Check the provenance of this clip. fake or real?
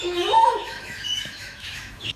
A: fake